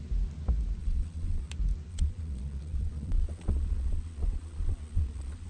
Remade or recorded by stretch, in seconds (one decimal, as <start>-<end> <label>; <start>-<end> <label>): 0.0-0.8 recorded; 0.8-1.5 remade; 1.5-1.9 recorded; 1.9-5.5 remade